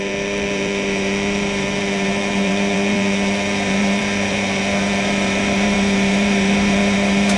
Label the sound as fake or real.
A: fake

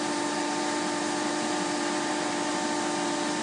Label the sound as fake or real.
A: fake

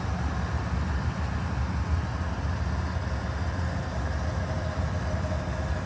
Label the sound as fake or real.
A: real